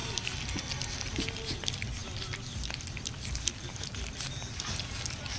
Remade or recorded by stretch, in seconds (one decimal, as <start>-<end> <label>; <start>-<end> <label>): 0.0-5.4 recorded